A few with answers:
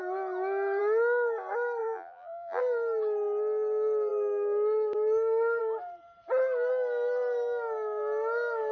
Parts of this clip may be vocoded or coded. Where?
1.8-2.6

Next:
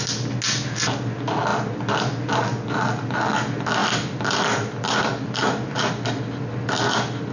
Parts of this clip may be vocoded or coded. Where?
1.5-2.0; 3.8-5.9

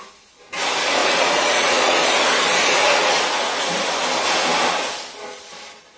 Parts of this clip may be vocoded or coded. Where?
1.0-2.0; 2.8-3.7

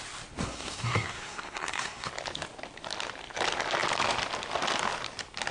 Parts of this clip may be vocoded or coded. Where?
0.4-2.1

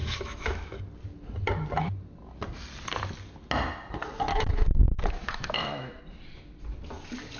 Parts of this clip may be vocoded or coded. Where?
0.0-0.8; 4.3-6.0

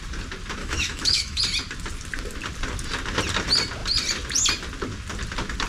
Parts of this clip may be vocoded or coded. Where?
0.6-1.4

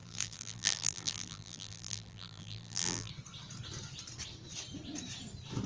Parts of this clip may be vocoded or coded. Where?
0.0-3.1